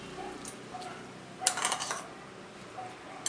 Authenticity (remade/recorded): recorded